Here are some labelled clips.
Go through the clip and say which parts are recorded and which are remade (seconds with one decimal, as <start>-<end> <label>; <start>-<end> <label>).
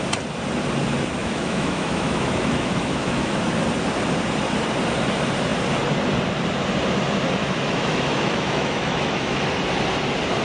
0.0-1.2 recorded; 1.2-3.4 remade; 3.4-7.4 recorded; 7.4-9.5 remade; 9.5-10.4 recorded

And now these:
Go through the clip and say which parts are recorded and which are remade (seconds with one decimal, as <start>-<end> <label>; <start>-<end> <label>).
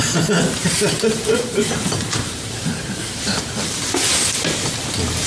0.0-0.6 recorded; 0.6-3.8 remade; 3.8-5.3 recorded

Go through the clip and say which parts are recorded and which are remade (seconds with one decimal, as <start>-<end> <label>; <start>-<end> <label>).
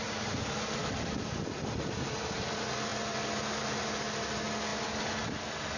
0.0-2.9 recorded; 2.9-4.2 remade; 4.2-5.8 recorded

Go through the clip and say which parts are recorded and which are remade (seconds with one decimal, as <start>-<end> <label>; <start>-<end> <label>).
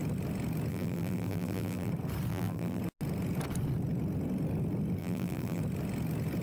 0.0-0.7 recorded; 0.7-1.9 remade; 1.9-2.3 recorded; 2.3-2.8 remade; 2.8-5.0 recorded; 5.0-5.6 remade; 5.6-6.4 recorded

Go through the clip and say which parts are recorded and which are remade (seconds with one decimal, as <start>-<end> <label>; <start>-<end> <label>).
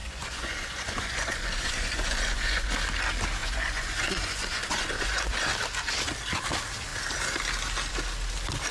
0.0-2.7 remade; 2.7-3.4 recorded; 3.4-5.5 remade; 5.5-8.7 recorded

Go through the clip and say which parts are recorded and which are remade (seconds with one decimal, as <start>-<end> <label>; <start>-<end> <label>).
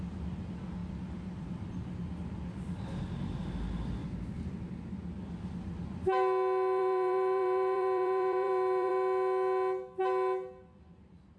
0.0-0.8 recorded; 0.8-2.1 remade; 2.1-4.0 recorded; 4.0-4.5 remade; 4.5-6.8 recorded; 6.8-8.9 remade; 8.9-11.4 recorded